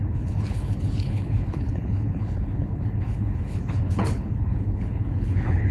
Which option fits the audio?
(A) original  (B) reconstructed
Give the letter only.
B